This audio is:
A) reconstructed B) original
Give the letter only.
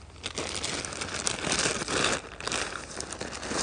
B